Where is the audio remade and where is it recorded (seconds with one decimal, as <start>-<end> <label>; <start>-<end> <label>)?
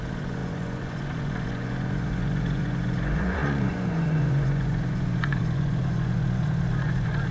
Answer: 0.0-7.3 remade